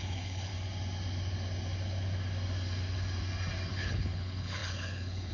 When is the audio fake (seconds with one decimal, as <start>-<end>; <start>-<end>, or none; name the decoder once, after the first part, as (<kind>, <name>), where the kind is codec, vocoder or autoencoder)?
0.0-0.5 (codec, HILCodec); 3.7-5.3